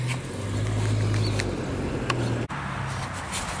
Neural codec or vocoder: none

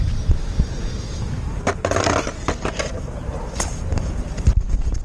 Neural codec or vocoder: none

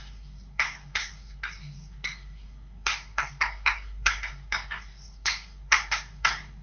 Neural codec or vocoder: codec, SNAC